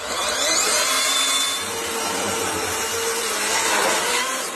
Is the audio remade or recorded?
recorded